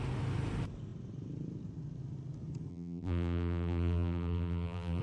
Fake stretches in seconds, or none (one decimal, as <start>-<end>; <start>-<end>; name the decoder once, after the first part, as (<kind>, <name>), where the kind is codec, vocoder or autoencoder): 2.7-5.0 (vocoder, BigVGAN v2)